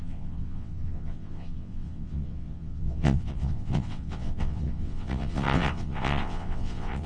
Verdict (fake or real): fake